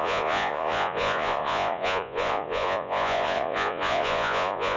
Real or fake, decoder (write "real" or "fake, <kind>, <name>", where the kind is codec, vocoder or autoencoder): fake, vocoder, Vocos